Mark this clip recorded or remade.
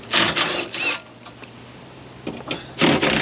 recorded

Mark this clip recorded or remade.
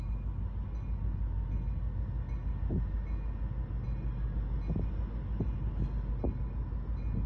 recorded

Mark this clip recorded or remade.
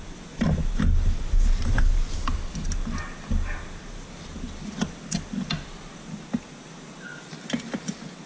recorded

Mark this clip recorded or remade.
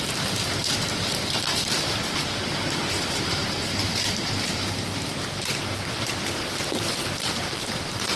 remade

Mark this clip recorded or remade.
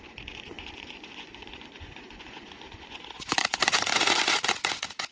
remade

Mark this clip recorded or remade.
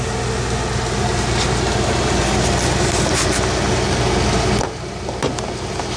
recorded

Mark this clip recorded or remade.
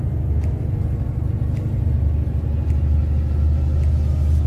recorded